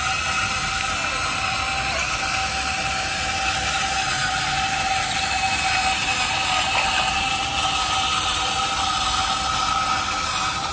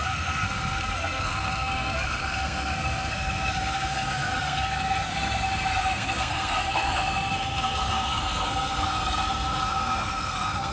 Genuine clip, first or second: first